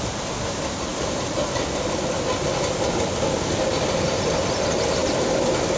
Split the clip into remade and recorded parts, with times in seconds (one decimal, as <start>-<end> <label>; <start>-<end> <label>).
0.0-5.8 recorded